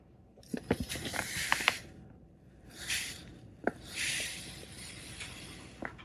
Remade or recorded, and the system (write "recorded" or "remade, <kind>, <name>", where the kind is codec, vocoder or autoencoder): remade, vocoder, BigVGAN v2